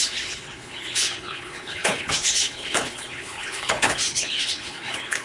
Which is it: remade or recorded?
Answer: remade